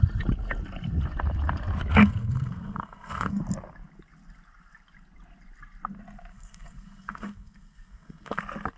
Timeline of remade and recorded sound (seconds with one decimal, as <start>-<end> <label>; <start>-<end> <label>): 0.0-2.0 recorded; 2.0-3.4 remade; 3.4-6.3 recorded; 6.3-8.4 remade; 8.4-8.8 recorded